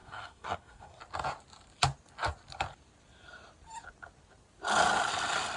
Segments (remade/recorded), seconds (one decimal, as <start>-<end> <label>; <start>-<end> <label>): 0.0-1.0 remade; 1.0-5.6 recorded